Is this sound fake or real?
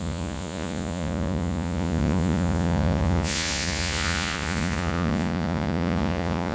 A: fake